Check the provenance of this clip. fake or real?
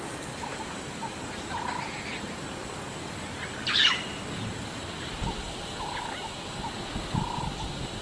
real